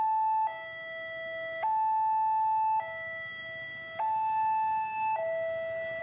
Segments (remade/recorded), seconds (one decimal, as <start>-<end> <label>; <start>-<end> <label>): 0.0-6.0 recorded